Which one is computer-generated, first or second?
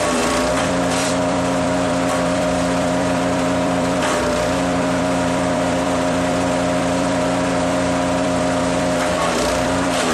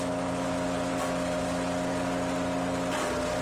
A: first